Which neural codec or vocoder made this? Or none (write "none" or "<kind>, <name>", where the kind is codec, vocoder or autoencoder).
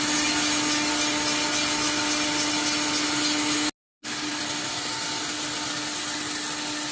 none